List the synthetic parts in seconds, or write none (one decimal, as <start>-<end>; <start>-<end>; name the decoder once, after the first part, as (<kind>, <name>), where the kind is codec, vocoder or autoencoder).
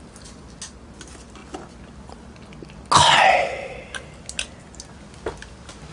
none